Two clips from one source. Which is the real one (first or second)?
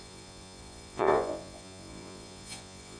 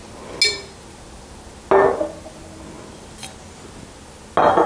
second